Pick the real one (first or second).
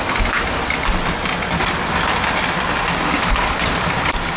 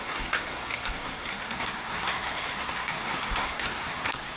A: first